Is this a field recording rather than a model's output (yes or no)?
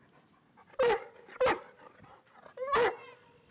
yes